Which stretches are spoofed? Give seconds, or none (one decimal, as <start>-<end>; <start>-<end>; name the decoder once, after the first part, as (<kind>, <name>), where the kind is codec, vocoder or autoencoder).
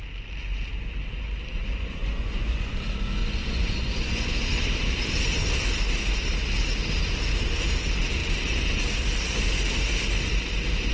1.6-2.8 (vocoder, Vocos); 3.2-4.3